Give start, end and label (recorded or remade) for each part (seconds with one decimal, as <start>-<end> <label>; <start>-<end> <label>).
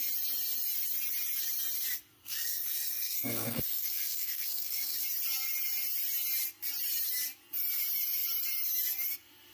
0.0-2.2 recorded; 2.2-5.0 remade; 5.0-9.5 recorded